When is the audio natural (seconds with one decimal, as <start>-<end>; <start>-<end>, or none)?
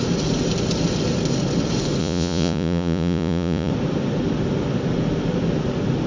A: 0.0-2.0; 3.7-6.1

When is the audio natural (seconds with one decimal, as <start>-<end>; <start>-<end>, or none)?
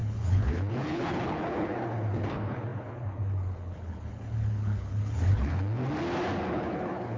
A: 5.8-6.5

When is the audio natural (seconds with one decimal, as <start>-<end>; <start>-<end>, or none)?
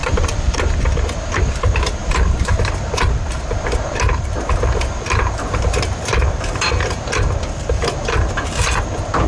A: 0.7-2.0; 7.2-9.3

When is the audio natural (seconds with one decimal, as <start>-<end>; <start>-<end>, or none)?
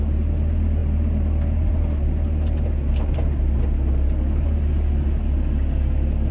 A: 0.0-6.3